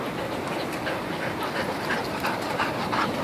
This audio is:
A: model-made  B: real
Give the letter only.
B